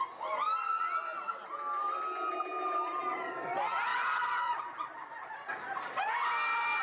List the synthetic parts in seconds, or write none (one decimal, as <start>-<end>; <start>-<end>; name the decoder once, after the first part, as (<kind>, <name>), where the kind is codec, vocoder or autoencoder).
3.9-4.6 (vocoder, Vocos)